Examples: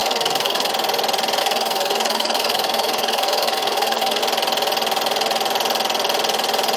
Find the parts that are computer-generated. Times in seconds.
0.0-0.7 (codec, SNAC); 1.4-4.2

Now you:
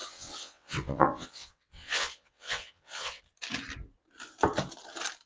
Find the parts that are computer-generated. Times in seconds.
0.0-3.2 (vocoder, WaveNeXt)

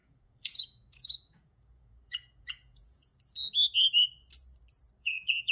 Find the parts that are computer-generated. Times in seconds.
0.0-3.1 (vocoder, Vocos); 5.0-5.5

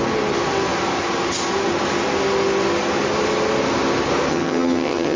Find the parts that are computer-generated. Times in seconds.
4.3-5.2 (vocoder, HiFi-GAN)

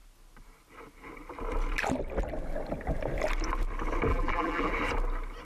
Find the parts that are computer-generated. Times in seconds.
4.1-4.7 (vocoder, BigVGAN v2)